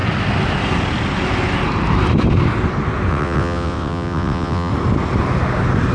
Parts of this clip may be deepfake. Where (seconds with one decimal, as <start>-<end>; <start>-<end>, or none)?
3.1-4.7